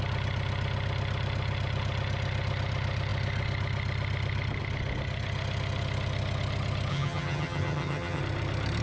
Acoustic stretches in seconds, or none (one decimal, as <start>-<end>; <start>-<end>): 0.0-6.9; 8.2-8.8